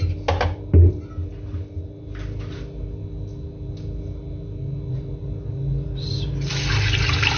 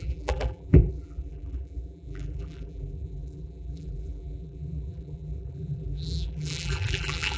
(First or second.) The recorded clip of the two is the first